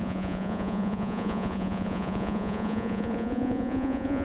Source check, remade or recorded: remade